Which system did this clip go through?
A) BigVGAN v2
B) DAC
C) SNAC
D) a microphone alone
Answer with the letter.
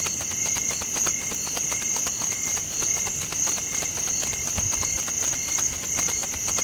D